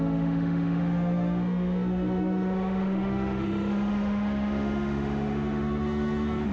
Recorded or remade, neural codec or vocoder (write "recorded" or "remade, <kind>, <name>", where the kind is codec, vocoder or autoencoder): remade, autoencoder, DAC-VAE